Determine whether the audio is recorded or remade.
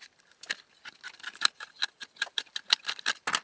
recorded